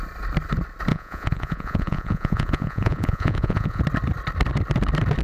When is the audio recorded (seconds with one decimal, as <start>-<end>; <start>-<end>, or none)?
0.0-0.9; 3.8-5.2